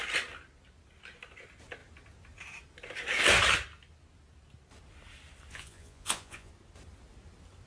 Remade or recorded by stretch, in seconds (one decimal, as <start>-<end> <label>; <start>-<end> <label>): 0.0-5.5 recorded; 5.5-6.5 remade; 6.5-7.7 recorded